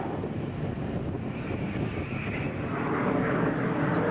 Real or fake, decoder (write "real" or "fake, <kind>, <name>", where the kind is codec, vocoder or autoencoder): real